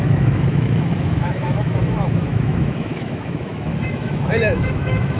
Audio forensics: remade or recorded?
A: remade